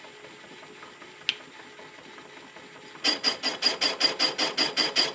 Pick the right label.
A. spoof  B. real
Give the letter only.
B